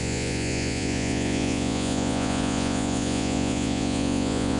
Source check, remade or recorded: remade